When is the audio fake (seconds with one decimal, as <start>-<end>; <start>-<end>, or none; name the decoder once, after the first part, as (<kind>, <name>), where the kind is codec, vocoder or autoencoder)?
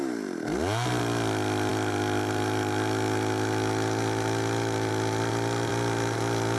none